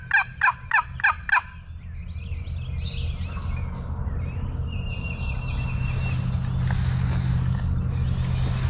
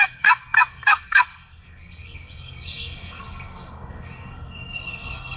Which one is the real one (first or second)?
first